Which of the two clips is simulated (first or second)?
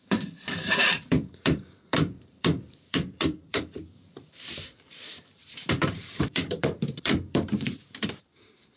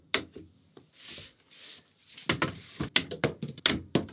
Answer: first